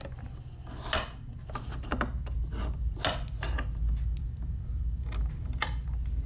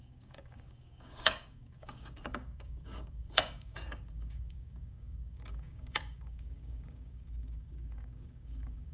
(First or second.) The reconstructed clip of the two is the second